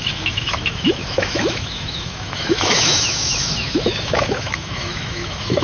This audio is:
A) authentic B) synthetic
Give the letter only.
B